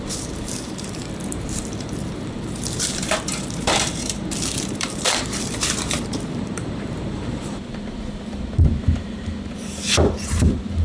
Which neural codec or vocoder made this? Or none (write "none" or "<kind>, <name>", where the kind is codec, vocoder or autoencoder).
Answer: vocoder, BigVGAN v2